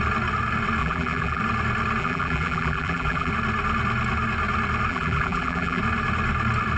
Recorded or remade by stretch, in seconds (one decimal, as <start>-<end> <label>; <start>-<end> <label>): 0.0-0.8 recorded; 0.8-1.4 remade; 1.4-2.0 recorded; 2.0-3.3 remade; 3.3-4.9 recorded; 4.9-5.8 remade; 5.8-6.8 recorded